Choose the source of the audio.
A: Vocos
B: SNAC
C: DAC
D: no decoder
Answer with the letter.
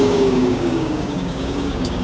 C